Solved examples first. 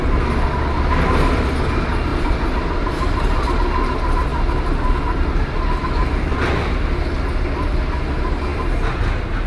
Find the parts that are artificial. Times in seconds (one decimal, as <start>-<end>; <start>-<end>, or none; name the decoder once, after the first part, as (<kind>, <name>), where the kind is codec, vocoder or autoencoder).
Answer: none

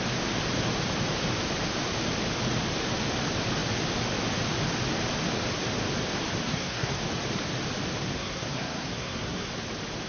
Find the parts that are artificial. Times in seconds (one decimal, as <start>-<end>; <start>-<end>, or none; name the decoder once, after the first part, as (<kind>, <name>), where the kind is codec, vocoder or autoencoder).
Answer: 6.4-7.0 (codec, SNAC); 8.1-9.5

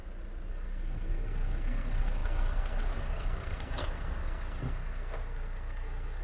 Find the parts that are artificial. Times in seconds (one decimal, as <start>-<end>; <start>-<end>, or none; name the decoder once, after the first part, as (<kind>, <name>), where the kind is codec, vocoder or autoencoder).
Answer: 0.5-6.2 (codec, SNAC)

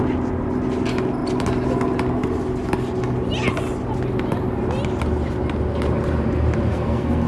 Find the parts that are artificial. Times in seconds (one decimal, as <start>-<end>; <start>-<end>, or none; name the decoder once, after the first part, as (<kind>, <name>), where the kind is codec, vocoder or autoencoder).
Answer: 6.7-7.3 (codec, SNAC)

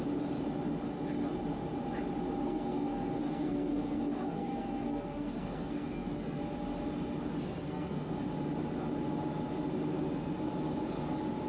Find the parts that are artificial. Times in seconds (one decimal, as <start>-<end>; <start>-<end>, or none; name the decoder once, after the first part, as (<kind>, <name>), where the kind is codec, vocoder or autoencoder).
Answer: 2.4-6.4 (codec, SNAC); 7.4-8.1